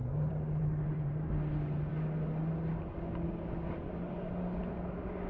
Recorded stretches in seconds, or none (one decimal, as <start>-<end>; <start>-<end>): 1.3-5.3